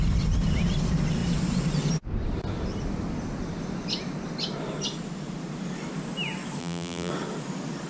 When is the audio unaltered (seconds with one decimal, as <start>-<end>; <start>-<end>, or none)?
0.0-6.6; 7.1-7.9